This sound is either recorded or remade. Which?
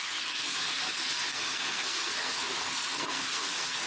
remade